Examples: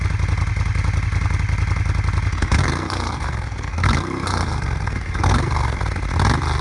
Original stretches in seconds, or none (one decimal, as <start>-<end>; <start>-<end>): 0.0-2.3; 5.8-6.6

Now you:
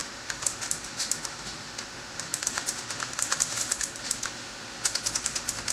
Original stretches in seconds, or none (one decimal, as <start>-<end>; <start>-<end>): none

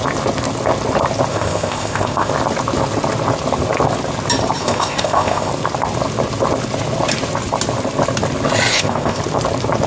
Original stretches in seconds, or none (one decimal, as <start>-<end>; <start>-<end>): 0.0-1.3; 2.3-4.6; 5.5-8.7; 9.2-9.9

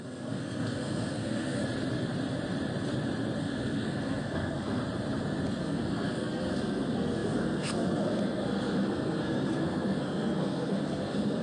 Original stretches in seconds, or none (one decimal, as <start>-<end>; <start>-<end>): 1.6-3.4; 4.8-5.6

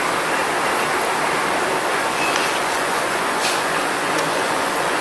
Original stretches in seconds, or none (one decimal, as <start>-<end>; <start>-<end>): 0.0-1.9

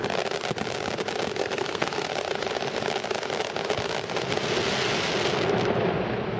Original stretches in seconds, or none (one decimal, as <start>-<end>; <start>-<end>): 0.0-1.4; 2.1-6.4

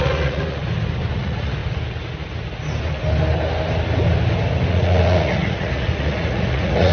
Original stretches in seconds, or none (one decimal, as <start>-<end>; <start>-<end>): 0.6-1.1; 1.6-4.7

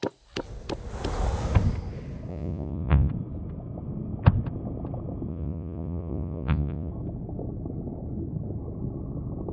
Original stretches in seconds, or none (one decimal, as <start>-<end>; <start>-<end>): 0.0-2.3; 3.1-5.3; 6.9-9.5